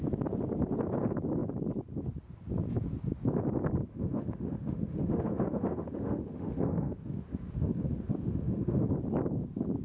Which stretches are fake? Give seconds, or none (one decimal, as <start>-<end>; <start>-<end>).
3.9-8.9